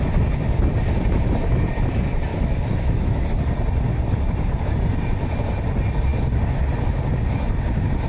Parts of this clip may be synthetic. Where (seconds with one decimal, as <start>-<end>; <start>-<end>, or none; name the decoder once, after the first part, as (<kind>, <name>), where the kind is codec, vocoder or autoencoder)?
2.3-3.2 (autoencoder, DAC-VAE)